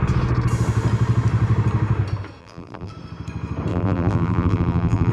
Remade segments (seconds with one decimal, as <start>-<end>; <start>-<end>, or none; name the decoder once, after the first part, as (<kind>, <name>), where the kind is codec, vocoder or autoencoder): 2.4-2.9 (vocoder, BigVGAN v2); 3.7-5.1